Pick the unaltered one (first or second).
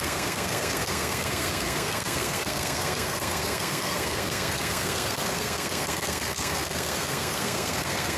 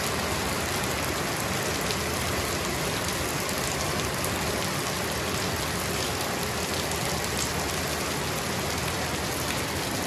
second